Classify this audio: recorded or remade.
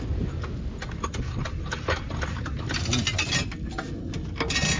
recorded